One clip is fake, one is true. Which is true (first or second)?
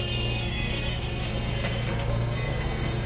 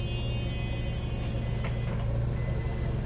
second